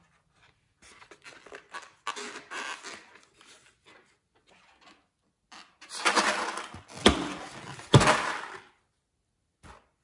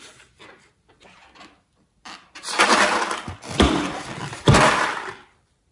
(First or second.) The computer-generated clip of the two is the second